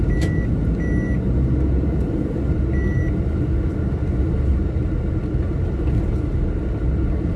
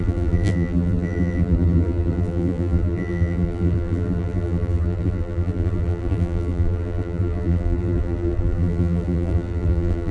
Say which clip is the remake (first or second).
second